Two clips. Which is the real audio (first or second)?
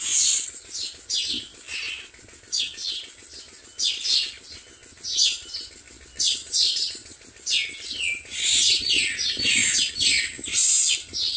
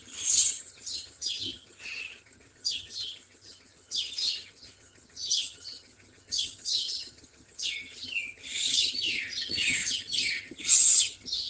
first